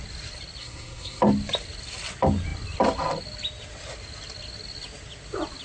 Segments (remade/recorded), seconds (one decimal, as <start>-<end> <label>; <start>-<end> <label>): 0.0-0.6 recorded; 0.6-1.2 remade; 1.2-5.6 recorded